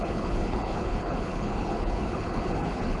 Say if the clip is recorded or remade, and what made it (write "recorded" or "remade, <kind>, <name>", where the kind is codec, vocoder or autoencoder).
remade, codec, HILCodec